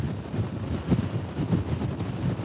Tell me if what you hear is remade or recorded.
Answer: recorded